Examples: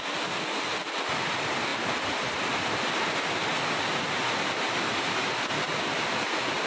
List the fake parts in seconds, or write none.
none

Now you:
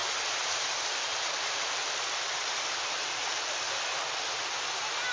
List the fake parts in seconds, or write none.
none

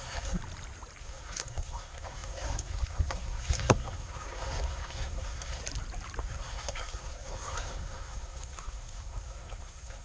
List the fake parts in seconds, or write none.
0.0-0.4 (codec, SNAC); 1.0-5.6; 6.2-10.0

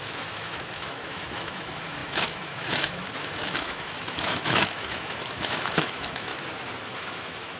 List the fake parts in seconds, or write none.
0.0-6.3 (autoencoder, DAC-VAE); 6.9-7.6

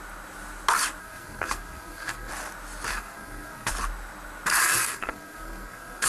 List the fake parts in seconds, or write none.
1.0-2.3 (codec, SNAC); 2.9-3.7; 4.6-6.1

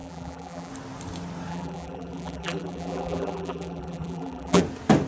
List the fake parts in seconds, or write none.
0.0-0.7 (vocoder, BigVGAN v2); 1.5-4.6